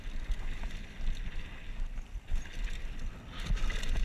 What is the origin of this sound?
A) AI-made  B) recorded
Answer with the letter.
B